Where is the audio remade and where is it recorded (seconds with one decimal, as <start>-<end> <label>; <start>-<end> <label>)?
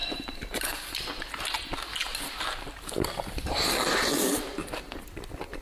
0.0-0.6 remade; 0.6-2.0 recorded; 2.0-2.9 remade; 2.9-5.6 recorded